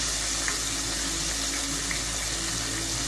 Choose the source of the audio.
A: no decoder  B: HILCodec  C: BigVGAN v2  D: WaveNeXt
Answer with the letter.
A